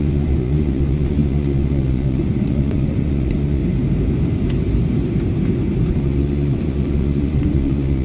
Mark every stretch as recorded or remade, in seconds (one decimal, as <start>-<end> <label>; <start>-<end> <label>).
0.0-3.6 remade; 3.6-5.9 recorded; 5.9-8.0 remade